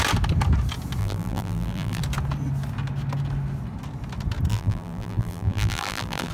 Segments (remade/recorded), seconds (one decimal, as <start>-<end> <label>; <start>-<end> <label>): 0.0-1.0 recorded; 1.0-2.0 remade; 2.0-4.5 recorded; 4.5-6.3 remade